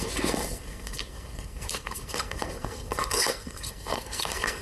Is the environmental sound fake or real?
fake